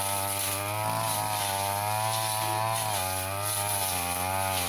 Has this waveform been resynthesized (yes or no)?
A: no